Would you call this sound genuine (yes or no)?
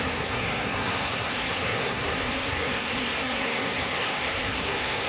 no